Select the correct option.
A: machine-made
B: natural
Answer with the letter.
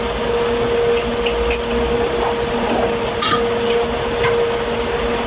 B